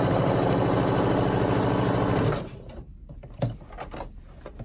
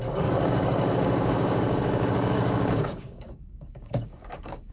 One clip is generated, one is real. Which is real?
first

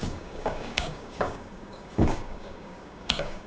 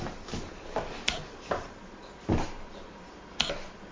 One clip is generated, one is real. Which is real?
second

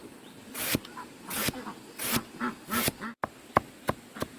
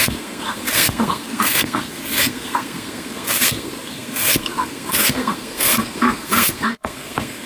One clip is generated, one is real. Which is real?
first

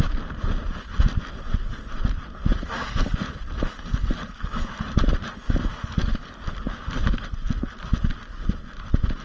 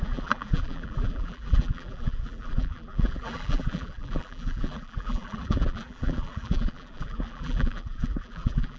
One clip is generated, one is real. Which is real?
first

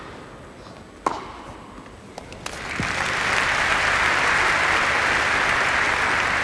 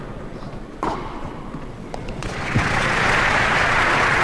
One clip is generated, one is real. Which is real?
first